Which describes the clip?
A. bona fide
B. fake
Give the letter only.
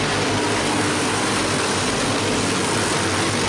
A